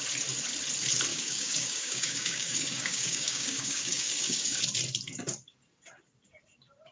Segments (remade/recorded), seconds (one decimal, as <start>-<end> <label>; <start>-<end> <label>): 0.0-1.1 recorded; 1.1-4.6 remade; 4.6-6.9 recorded